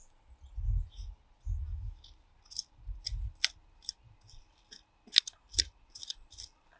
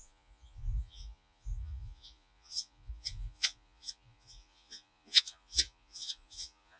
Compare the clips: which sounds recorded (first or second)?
first